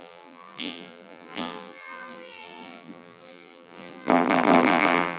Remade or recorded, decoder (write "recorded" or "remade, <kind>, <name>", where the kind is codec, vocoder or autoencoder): remade, vocoder, BigVGAN v2